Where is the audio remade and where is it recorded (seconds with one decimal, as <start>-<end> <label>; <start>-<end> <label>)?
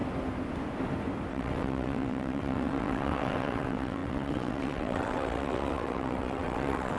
0.0-1.3 recorded; 1.3-7.0 remade